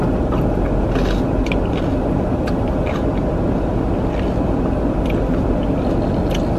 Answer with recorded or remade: recorded